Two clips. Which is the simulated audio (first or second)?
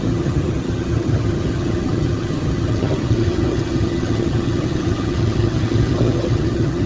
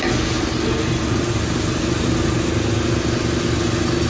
first